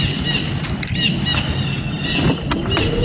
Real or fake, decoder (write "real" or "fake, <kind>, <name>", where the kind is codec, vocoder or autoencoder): real